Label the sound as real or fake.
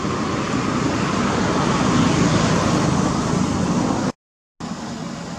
real